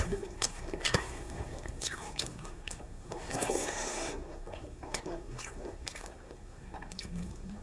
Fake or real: fake